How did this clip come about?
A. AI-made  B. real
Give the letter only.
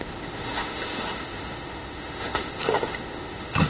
A